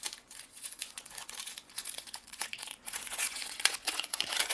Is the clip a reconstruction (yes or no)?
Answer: yes